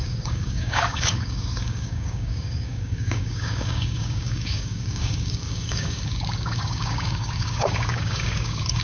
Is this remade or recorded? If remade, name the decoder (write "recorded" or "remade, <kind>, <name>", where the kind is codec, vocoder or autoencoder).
remade, codec, DAC